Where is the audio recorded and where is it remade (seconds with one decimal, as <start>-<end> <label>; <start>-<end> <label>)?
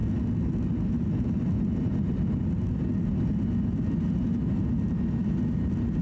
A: 0.0-6.0 recorded